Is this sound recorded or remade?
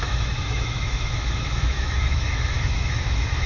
remade